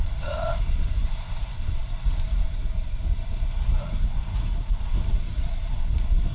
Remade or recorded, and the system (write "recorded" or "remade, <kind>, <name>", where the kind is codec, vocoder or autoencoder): remade, vocoder, Vocos